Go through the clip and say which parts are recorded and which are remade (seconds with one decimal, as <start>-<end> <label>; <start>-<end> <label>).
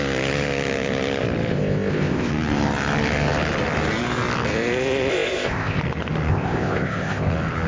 0.0-1.5 recorded; 1.5-2.3 remade; 2.3-5.1 recorded; 5.1-5.8 remade; 5.8-6.3 recorded; 6.3-7.3 remade; 7.3-7.7 recorded